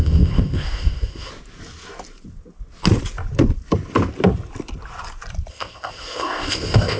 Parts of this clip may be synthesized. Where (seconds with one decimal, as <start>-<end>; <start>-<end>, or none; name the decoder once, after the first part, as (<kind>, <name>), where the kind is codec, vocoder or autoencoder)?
0.0-1.3 (codec, ZipCodec); 5.5-7.0